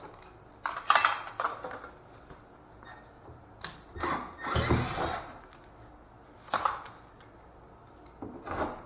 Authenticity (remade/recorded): recorded